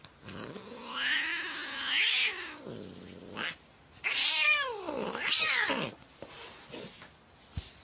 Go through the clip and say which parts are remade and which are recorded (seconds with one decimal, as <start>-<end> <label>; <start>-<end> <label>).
0.0-7.8 recorded